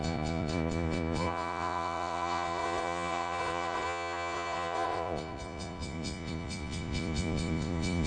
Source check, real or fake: fake